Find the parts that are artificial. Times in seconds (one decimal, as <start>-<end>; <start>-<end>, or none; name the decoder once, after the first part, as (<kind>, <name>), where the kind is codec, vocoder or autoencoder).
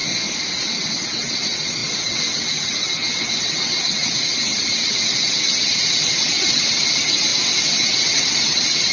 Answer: 0.5-8.9 (vocoder, WaveNeXt)